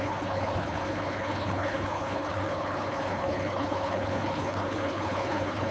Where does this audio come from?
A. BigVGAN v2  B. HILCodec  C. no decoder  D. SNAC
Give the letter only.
B